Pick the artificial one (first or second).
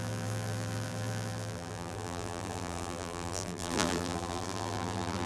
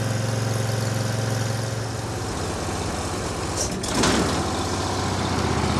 first